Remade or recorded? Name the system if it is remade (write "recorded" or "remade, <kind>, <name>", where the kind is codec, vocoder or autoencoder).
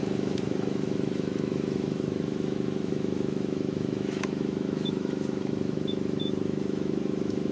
remade, autoencoder, DAC-VAE